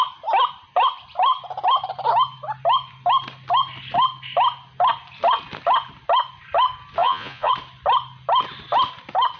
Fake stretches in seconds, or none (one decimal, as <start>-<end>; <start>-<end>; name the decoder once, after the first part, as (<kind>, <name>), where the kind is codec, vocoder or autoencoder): 7.0-7.5 (vocoder, Vocos)